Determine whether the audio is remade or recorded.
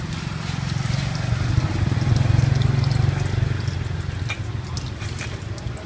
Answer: recorded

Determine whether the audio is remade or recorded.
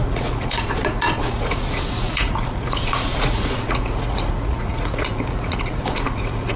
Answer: remade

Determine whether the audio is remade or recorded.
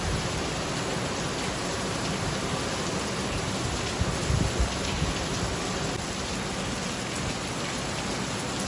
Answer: recorded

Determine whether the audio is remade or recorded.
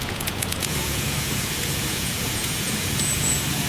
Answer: remade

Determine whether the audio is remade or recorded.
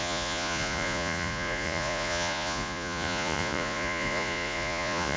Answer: remade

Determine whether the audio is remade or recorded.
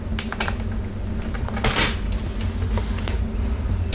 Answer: recorded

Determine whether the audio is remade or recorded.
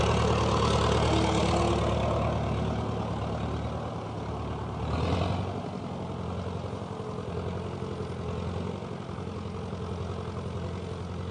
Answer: recorded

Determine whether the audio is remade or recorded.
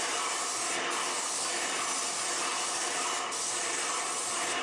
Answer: recorded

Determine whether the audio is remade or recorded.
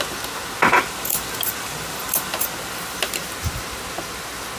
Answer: recorded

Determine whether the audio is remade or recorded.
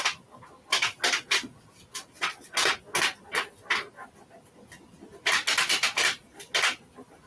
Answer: recorded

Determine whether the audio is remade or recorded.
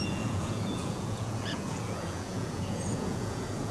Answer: remade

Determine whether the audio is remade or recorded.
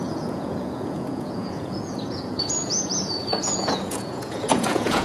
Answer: remade